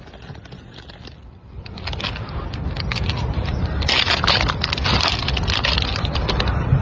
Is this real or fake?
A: real